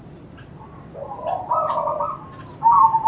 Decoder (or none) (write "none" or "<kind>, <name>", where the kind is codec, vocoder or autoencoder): none